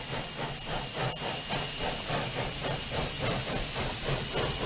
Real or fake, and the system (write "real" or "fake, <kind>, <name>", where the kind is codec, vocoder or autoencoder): fake, vocoder, BigVGAN v2